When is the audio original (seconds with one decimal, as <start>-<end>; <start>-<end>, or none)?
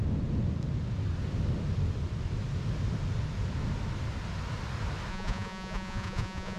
0.0-5.1